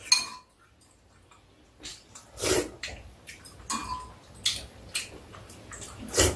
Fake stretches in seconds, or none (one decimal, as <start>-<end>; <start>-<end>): none